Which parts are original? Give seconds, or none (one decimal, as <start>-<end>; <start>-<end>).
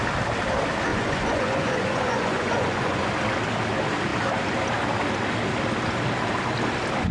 0.0-0.9; 3.1-7.1